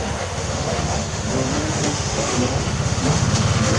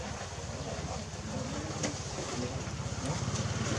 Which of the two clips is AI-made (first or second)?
first